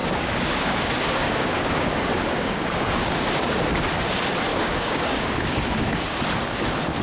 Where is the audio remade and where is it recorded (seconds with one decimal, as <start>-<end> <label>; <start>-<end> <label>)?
0.0-3.6 remade; 3.6-4.5 recorded; 4.5-6.2 remade; 6.2-7.0 recorded